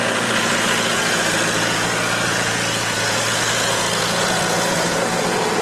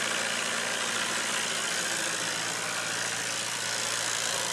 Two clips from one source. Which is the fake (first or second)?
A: first